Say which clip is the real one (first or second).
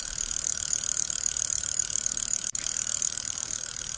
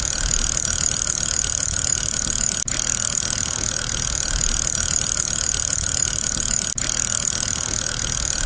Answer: second